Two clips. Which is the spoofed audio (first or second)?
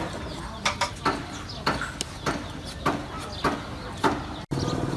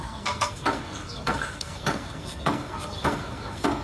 second